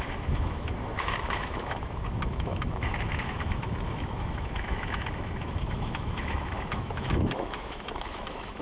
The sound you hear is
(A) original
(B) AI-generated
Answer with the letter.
B